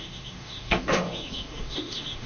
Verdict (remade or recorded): remade